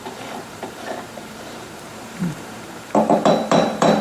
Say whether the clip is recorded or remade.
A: remade